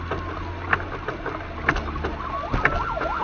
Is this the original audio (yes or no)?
yes